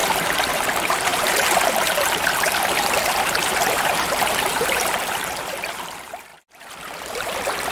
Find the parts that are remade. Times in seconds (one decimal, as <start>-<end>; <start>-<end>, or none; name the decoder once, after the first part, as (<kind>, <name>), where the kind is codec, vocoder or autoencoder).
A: 0.5-6.3 (vocoder, BigVGAN v2); 7.0-7.7